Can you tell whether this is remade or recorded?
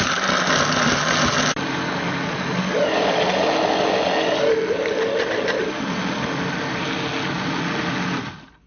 recorded